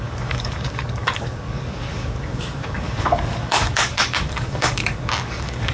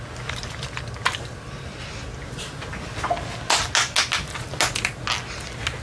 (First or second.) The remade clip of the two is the first